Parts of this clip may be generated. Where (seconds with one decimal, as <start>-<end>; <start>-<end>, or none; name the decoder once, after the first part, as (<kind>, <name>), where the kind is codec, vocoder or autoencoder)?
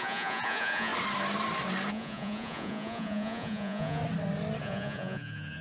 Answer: 0.0-0.9 (vocoder, Vocos); 1.9-4.0; 4.6-5.6